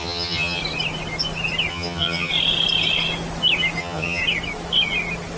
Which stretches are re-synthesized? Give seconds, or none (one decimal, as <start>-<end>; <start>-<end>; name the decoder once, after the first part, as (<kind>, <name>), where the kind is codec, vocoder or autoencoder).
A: 0.0-0.6 (vocoder, HiFi-GAN); 1.7-2.3; 3.8-4.2